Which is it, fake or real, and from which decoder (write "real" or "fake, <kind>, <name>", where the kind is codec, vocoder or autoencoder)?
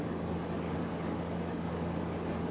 fake, codec, DAC